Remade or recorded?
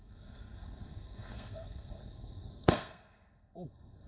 remade